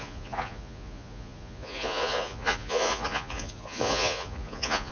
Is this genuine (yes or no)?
no